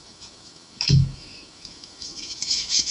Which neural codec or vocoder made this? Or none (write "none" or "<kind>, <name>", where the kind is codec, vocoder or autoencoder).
autoencoder, DAC-VAE